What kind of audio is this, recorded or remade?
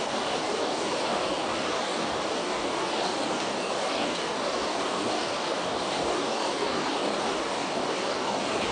remade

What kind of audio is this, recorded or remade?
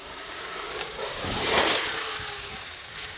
remade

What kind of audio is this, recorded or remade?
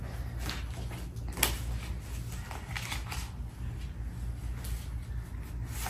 recorded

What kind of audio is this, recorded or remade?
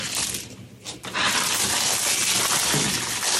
recorded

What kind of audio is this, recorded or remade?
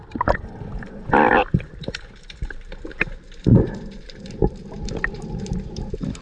recorded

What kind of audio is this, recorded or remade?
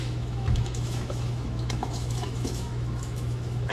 remade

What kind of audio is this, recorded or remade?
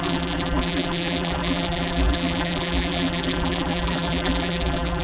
remade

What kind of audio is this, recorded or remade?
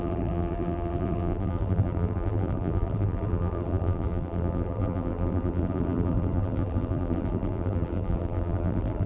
remade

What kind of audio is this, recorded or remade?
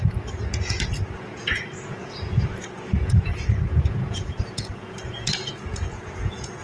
remade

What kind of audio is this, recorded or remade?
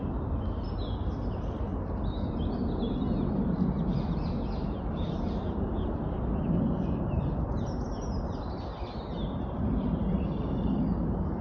recorded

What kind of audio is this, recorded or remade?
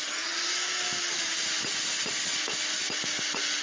recorded